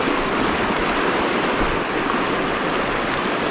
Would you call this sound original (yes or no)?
yes